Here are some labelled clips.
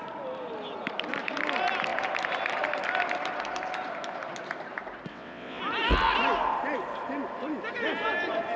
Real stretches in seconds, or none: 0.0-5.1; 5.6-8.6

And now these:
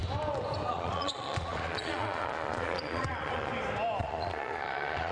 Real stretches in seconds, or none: 0.0-0.7; 3.5-4.0

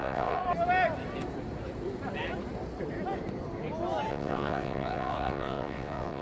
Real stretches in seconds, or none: 0.4-4.1

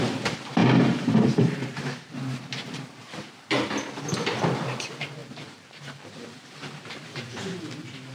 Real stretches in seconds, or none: 0.0-0.6; 3.2-5.2; 7.6-8.1

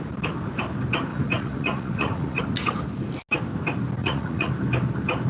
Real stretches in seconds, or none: 0.0-1.1; 2.4-4.0; 4.5-5.3

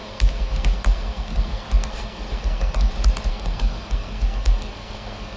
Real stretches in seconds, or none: 2.9-3.3